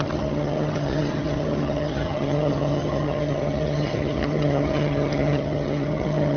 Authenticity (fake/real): fake